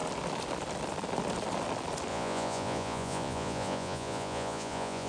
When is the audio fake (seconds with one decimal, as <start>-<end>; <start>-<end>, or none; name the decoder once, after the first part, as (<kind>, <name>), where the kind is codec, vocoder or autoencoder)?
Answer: 2.1-5.1 (vocoder, Vocos)